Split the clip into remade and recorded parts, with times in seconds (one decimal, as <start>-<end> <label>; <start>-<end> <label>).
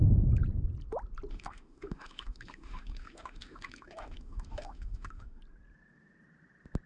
0.0-1.3 recorded; 1.3-5.4 remade; 5.4-6.9 recorded